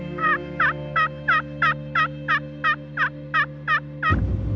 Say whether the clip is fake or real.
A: real